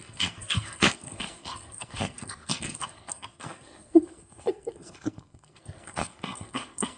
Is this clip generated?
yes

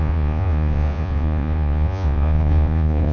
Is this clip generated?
yes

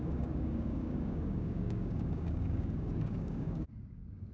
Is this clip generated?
yes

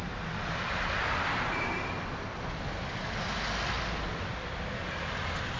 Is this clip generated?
no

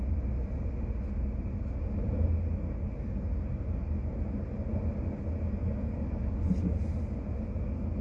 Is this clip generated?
no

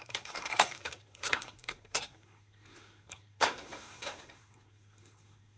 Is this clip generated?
yes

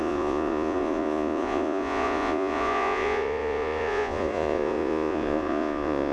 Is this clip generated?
yes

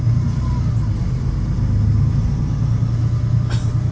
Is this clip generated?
no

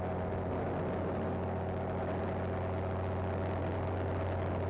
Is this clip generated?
no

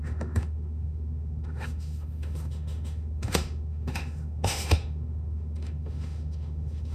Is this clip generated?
yes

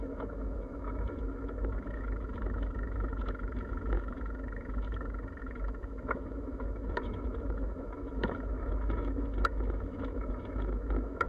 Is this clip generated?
yes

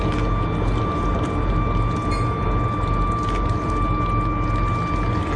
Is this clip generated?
no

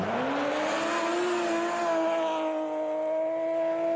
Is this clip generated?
no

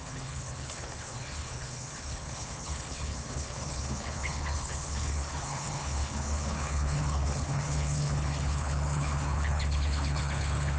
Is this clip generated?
yes